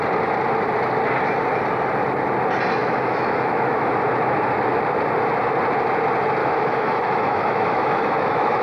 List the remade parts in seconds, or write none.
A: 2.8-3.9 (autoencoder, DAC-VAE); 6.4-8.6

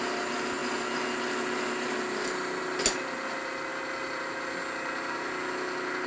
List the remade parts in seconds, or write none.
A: none